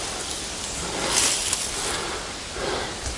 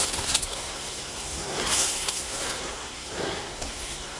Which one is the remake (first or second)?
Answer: second